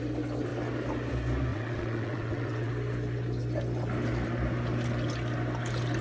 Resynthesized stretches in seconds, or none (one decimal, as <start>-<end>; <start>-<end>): 1.5-2.7